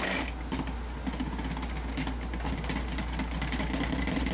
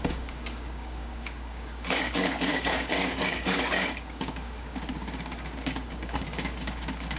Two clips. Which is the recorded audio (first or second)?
first